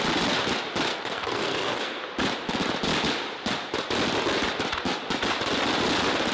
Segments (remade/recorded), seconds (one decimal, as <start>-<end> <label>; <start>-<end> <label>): 0.0-0.9 recorded; 0.9-2.0 remade; 2.0-6.3 recorded